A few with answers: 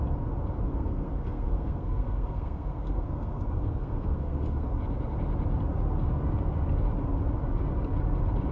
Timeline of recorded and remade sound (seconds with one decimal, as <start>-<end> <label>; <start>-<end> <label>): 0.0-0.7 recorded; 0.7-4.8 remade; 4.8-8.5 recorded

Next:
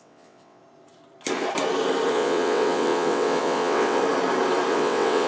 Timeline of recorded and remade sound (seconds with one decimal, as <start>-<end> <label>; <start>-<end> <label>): 0.0-0.6 remade; 0.6-2.1 recorded; 2.1-4.0 remade; 4.0-4.7 recorded; 4.7-5.3 remade

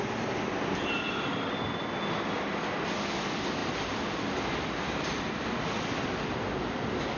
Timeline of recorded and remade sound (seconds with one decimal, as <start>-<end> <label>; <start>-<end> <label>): 0.0-7.2 recorded

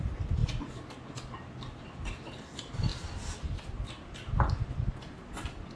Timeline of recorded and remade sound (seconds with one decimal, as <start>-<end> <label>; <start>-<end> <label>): 0.0-5.8 recorded

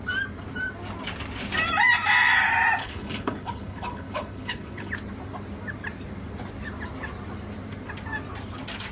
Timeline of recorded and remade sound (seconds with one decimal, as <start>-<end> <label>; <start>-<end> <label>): 0.0-2.8 recorded; 2.8-4.9 remade; 4.9-8.9 recorded

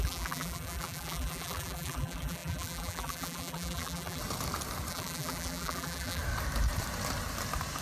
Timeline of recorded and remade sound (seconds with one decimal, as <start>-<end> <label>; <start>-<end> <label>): 0.0-4.2 remade; 4.2-4.9 recorded; 4.9-6.2 remade; 6.2-7.8 recorded

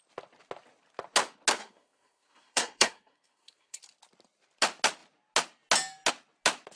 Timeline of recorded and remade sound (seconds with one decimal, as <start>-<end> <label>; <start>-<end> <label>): 0.0-1.6 recorded; 1.6-3.8 remade; 3.8-6.8 recorded

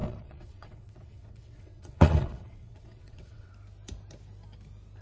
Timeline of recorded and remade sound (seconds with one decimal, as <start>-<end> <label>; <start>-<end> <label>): 0.0-3.5 remade; 3.5-5.0 recorded